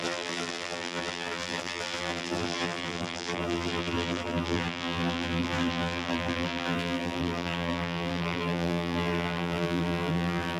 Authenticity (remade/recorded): remade